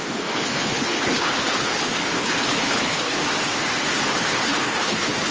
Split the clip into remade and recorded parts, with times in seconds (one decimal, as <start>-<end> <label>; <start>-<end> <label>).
0.0-3.2 remade; 3.2-4.1 recorded; 4.1-5.3 remade

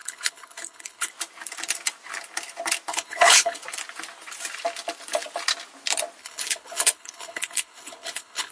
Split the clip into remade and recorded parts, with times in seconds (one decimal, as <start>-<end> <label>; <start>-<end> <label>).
0.0-1.1 remade; 1.1-2.9 recorded; 2.9-3.6 remade; 3.6-6.2 recorded; 6.2-8.5 remade

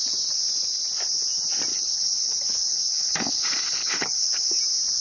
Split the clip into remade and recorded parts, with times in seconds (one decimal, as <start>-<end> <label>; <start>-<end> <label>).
0.0-1.7 recorded; 1.7-3.4 remade; 3.4-3.8 recorded; 3.8-4.6 remade; 4.6-5.0 recorded

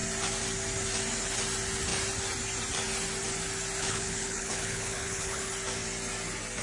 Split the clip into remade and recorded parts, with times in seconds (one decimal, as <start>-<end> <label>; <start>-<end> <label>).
0.0-3.8 recorded; 3.8-5.5 remade; 5.5-6.6 recorded

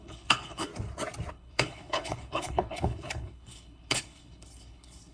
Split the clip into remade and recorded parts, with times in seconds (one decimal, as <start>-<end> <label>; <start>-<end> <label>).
0.0-0.7 remade; 0.7-1.3 recorded; 1.3-5.1 remade

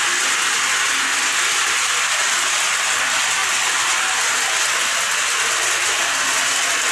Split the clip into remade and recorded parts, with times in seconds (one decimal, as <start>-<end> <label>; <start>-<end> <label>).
0.0-6.9 recorded